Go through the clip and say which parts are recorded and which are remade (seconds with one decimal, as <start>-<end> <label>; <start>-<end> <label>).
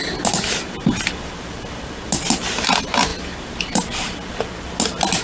0.0-5.2 recorded